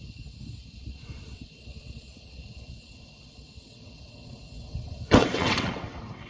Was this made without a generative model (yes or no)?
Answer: no